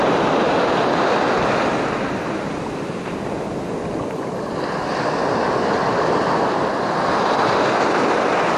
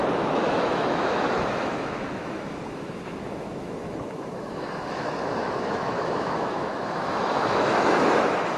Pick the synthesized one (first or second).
second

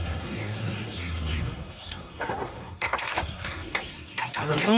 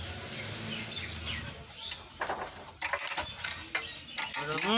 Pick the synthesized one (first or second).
first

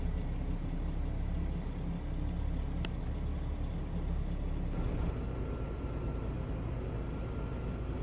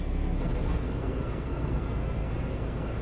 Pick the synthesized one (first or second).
second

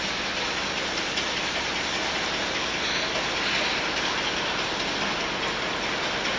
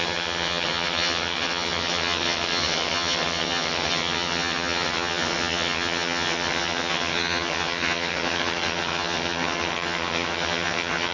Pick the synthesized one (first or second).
second